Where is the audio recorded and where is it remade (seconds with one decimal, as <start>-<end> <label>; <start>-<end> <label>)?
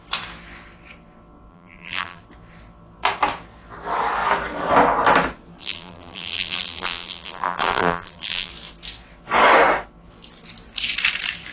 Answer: 0.0-1.5 recorded; 1.5-2.2 remade; 2.2-5.6 recorded; 5.6-8.5 remade; 8.5-11.5 recorded